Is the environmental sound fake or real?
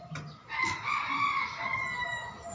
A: real